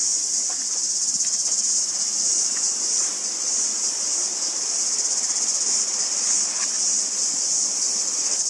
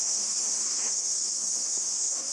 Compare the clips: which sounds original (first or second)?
first